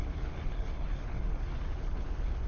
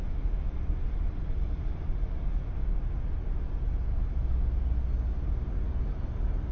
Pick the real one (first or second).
second